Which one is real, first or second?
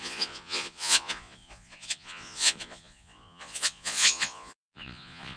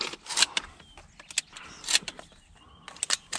second